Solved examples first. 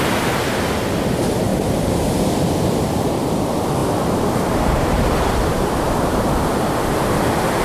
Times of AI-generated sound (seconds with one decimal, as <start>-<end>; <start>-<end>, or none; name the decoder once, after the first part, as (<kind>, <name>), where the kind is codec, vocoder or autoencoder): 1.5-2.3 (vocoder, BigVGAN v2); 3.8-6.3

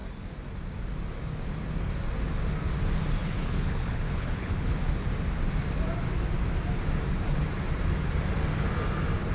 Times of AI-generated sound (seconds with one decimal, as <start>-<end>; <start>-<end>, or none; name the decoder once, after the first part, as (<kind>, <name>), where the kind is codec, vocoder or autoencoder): 3.2-4.8 (codec, HILCodec)

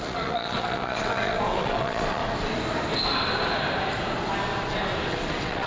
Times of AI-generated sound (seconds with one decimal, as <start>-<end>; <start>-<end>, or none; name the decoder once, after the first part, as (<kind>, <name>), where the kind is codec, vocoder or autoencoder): 0.0-2.2 (vocoder, WaveNeXt); 5.1-5.7

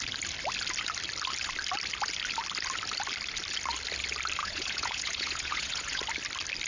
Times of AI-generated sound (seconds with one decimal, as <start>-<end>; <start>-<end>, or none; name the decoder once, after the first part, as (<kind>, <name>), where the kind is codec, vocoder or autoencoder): 4.4-6.0 (vocoder, Vocos)

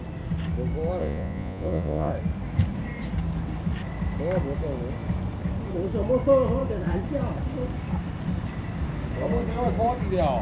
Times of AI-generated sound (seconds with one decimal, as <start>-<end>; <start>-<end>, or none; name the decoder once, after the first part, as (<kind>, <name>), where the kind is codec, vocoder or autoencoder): 1.0-2.1 (vocoder, Vocos)